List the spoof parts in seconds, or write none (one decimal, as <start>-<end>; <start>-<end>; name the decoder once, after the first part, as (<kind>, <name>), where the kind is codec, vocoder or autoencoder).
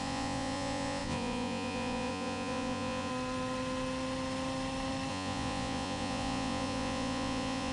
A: 0.0-3.1 (vocoder, Vocos); 5.1-7.7